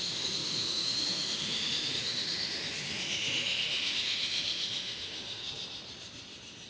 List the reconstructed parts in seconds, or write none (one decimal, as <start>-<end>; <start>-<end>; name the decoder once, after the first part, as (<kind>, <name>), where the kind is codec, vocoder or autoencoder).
0.0-5.4 (autoencoder, DAC-VAE)